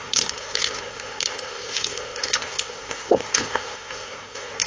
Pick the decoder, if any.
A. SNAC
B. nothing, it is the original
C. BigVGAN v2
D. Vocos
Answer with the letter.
A